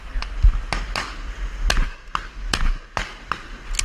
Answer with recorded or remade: recorded